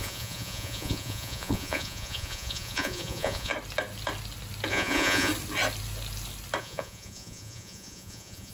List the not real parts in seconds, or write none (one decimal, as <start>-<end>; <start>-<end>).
0.0-3.5; 4.7-5.3; 6.6-8.5